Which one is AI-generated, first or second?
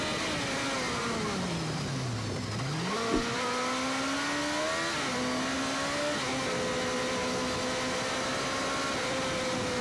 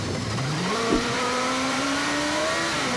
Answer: second